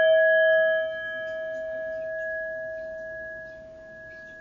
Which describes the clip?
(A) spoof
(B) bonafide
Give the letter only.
B